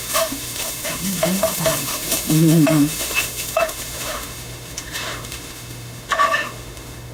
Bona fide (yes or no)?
no